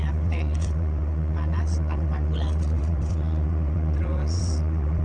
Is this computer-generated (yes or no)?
yes